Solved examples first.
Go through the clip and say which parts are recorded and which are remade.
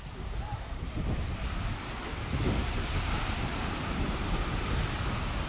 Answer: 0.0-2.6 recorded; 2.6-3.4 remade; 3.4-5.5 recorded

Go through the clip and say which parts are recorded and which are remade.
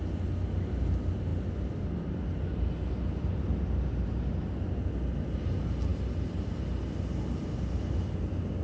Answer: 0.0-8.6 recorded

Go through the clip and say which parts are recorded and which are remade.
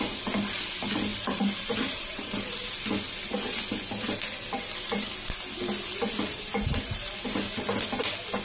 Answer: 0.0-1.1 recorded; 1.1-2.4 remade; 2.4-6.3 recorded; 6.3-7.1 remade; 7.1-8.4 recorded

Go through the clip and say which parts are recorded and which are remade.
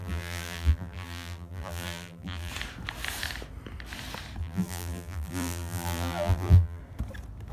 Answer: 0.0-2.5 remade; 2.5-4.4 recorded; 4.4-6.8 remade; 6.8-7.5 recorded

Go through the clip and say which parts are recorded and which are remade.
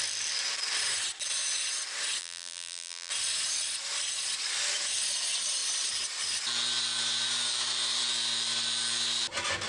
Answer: 0.0-2.2 recorded; 2.2-3.1 remade; 3.1-9.7 recorded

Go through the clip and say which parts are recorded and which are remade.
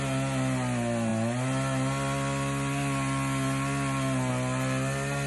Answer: 0.0-5.3 recorded